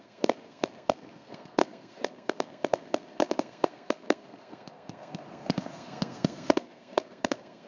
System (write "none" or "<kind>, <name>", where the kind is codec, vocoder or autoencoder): codec, SNAC